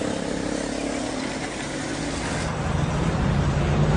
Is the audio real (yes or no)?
yes